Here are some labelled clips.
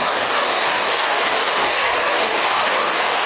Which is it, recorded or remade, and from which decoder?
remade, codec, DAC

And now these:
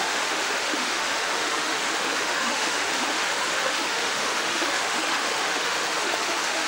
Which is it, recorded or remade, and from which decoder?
remade, autoencoder, DAC-VAE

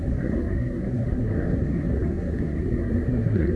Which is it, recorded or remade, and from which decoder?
remade, codec, SNAC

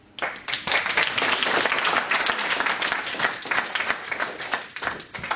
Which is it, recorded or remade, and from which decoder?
recorded